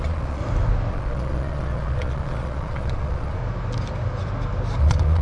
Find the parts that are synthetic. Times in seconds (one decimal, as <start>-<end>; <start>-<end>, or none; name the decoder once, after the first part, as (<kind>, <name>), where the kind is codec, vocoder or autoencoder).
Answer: 0.0-0.4 (vocoder, Vocos); 0.9-3.4; 4.8-5.2